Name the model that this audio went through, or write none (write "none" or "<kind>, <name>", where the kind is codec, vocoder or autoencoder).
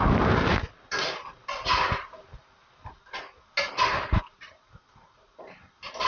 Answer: none